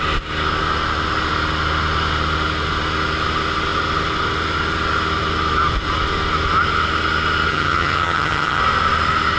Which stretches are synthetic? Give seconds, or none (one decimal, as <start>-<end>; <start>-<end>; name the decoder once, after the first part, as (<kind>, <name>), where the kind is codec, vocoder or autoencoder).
7.5-8.6 (vocoder, HiFi-GAN)